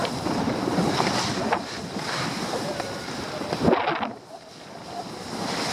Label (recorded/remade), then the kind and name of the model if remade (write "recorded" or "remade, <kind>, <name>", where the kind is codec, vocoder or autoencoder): recorded